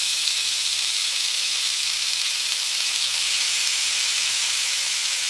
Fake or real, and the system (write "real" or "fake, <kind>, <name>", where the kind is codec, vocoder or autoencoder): fake, autoencoder, DAC-VAE